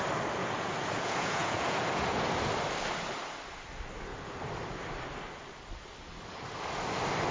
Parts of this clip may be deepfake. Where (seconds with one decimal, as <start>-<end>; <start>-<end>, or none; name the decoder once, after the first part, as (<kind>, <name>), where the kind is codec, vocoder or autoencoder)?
0.4-2.2 (vocoder, Vocos)